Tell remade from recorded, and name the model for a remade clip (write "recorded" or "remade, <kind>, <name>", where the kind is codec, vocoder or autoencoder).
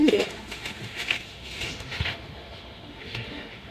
remade, autoencoder, DAC-VAE